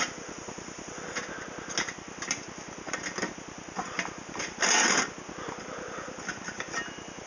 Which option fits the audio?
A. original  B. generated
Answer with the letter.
A